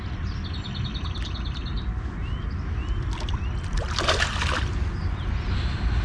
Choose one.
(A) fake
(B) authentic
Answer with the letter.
B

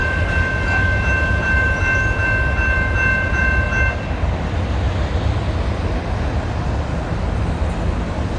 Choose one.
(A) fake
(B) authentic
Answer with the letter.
B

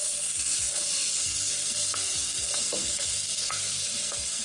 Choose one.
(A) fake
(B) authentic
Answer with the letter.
A